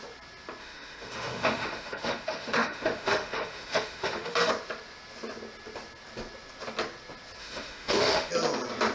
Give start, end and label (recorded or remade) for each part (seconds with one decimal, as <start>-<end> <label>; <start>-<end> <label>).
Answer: 0.0-0.6 recorded; 0.6-4.5 remade; 4.5-7.4 recorded; 7.4-8.3 remade; 8.3-8.9 recorded